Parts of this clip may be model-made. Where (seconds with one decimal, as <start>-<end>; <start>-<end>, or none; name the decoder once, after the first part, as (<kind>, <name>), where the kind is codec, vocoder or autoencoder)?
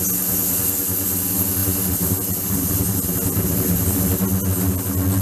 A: none